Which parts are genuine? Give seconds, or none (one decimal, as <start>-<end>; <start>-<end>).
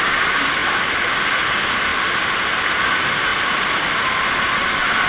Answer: 0.0-0.6; 1.4-5.1